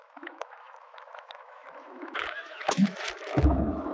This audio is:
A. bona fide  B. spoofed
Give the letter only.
B